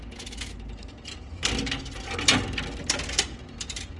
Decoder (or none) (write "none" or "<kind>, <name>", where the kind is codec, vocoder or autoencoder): none